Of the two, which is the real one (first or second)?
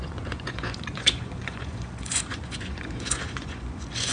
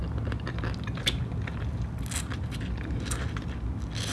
second